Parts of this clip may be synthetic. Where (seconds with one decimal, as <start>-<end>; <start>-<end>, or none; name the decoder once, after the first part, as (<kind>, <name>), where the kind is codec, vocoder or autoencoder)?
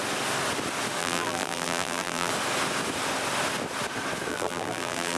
1.0-2.3 (vocoder, BigVGAN v2); 4.3-5.2